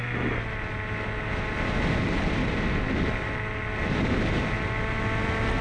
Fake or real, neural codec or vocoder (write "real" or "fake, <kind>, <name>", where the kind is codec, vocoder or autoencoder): real